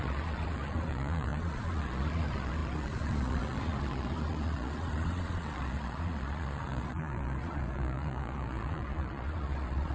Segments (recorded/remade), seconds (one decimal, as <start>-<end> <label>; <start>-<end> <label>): 0.0-9.9 remade